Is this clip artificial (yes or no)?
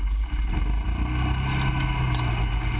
no